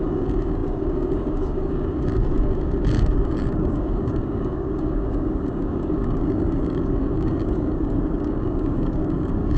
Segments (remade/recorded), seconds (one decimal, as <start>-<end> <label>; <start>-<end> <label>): 0.0-9.6 remade